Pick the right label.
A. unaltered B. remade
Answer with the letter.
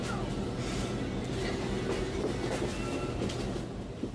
A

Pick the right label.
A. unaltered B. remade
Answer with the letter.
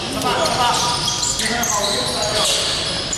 A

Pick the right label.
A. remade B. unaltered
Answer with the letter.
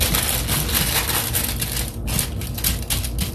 B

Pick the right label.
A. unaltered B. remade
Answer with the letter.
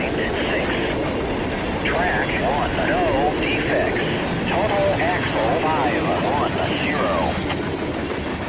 A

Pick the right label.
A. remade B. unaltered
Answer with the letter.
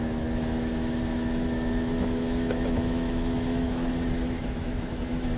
A